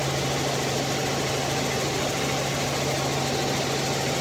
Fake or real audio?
real